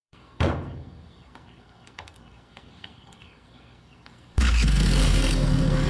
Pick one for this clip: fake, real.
fake